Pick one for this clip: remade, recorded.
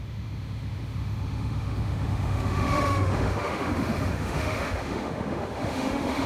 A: remade